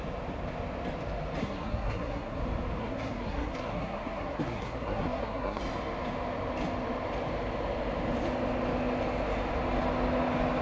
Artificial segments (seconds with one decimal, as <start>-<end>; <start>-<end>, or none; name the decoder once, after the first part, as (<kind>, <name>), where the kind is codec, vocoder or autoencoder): 1.4-2.4 (codec, SNAC); 2.8-5.6